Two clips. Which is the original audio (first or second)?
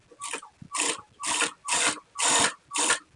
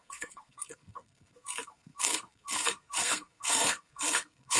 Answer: first